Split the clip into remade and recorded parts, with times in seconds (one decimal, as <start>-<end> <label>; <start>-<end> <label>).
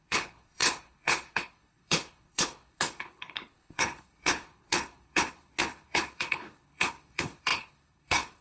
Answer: 0.0-8.4 remade